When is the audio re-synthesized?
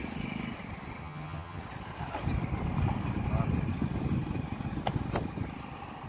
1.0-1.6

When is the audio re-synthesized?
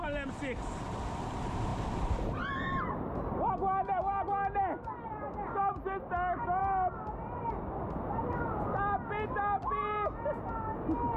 none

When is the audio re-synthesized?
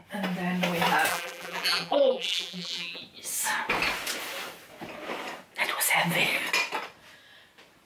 1.1-3.0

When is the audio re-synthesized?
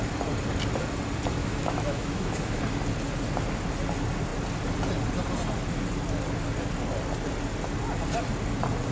1.4-2.6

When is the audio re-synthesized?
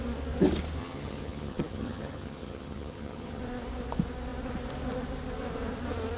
0.8-3.4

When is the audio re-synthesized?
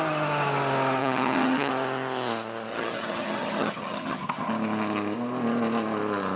1.0-1.7; 2.7-4.5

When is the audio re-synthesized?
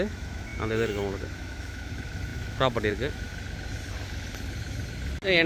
0.0-3.3